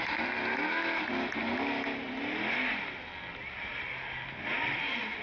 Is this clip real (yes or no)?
yes